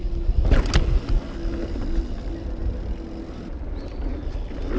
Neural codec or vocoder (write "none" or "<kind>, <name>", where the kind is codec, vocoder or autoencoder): none